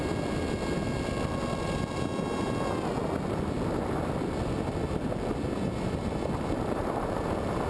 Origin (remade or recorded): recorded